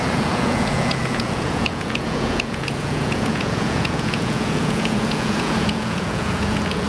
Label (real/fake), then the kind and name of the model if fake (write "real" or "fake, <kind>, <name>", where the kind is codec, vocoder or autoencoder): fake, vocoder, Vocos